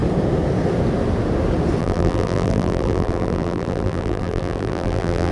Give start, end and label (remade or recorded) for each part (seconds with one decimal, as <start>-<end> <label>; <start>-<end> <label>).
0.0-1.8 recorded; 1.8-5.3 remade